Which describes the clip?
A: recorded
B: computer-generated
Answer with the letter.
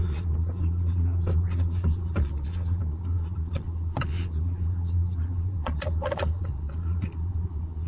B